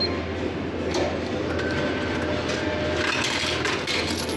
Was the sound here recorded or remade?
recorded